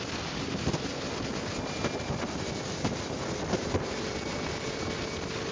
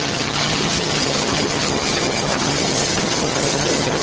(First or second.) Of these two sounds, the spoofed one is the second